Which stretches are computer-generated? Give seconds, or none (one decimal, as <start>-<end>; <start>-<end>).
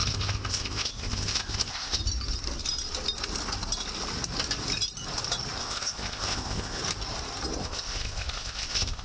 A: 0.0-2.0; 5.6-6.8; 7.6-9.0